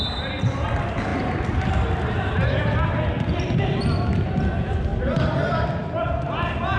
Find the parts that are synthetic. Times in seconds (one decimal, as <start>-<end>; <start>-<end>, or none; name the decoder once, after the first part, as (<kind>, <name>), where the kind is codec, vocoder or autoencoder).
none